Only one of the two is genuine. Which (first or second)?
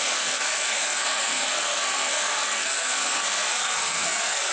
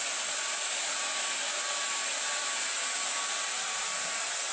second